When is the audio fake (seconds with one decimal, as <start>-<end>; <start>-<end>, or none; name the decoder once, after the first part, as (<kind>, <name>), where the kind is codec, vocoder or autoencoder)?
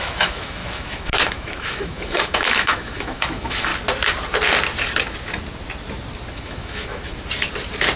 0.0-3.7 (autoencoder, DAC-VAE); 6.3-7.1